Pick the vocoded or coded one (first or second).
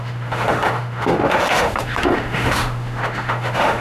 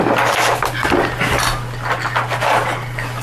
first